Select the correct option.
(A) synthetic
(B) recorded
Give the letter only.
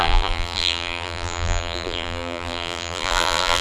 A